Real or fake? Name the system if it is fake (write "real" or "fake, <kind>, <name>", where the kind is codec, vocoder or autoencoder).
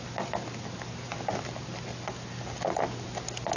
real